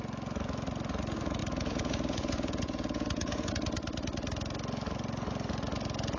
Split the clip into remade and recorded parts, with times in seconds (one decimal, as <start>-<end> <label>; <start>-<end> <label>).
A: 0.0-1.4 recorded; 1.4-3.5 remade; 3.5-6.2 recorded